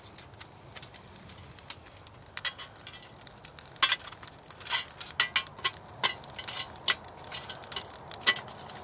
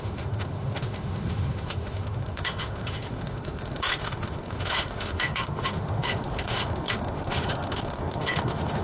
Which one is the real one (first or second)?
first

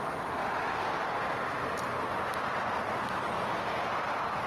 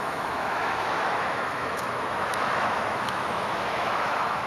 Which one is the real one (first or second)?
first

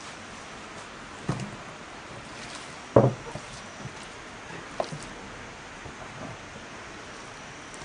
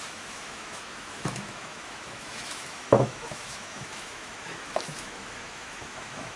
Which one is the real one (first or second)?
first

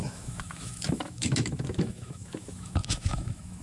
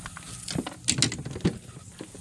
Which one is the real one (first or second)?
second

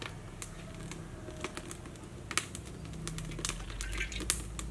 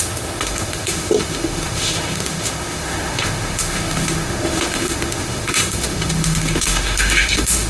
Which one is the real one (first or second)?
first